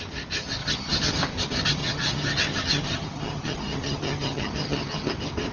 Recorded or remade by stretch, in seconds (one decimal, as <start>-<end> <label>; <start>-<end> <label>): 0.0-0.6 recorded; 0.6-1.1 remade; 1.1-1.8 recorded; 1.8-5.1 remade; 5.1-5.5 recorded